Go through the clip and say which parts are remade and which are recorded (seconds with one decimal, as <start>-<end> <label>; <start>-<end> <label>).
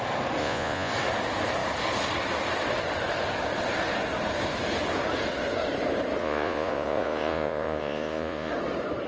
0.0-0.4 recorded; 0.4-0.9 remade; 0.9-6.2 recorded; 6.2-8.5 remade; 8.5-9.1 recorded